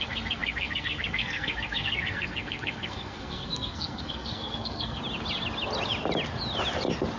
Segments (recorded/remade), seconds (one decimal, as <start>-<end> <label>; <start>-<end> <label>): 0.0-5.0 remade; 5.0-7.2 recorded